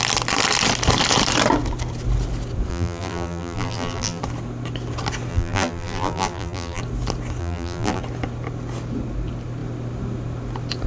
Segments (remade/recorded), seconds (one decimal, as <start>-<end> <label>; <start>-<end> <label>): 0.0-2.7 recorded; 2.7-4.2 remade; 4.2-5.3 recorded; 5.3-6.8 remade; 6.8-7.4 recorded; 7.4-8.0 remade; 8.0-10.9 recorded